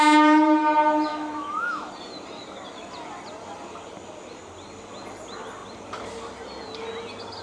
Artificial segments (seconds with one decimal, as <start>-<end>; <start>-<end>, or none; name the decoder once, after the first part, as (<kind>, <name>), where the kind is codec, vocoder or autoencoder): 1.1-1.9 (autoencoder, DAC-VAE)